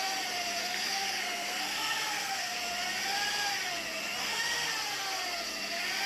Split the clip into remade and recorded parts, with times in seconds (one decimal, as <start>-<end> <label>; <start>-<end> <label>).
0.0-0.6 recorded; 0.6-2.6 remade; 2.6-4.1 recorded; 4.1-4.7 remade; 4.7-6.1 recorded